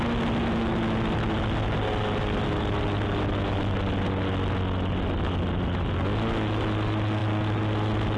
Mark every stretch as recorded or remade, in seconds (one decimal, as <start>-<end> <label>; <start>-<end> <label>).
0.0-8.2 recorded